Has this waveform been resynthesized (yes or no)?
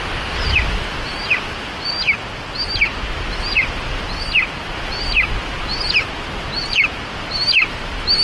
no